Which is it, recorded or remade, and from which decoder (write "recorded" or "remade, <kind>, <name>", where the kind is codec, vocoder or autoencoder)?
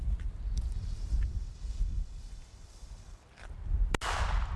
recorded